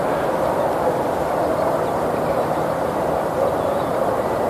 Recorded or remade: recorded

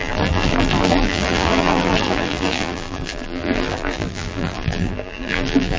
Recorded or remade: remade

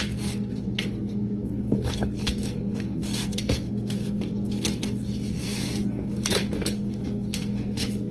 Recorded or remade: remade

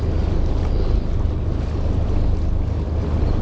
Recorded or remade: recorded